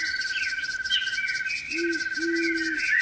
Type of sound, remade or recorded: recorded